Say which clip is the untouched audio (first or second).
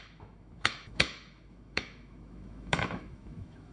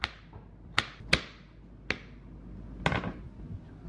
second